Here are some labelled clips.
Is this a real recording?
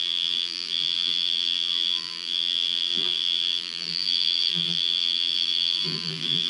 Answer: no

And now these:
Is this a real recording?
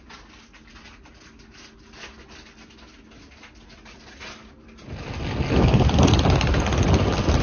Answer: yes